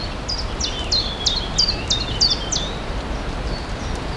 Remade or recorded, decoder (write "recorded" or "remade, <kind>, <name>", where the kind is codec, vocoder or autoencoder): recorded